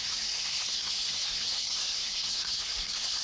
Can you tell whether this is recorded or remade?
remade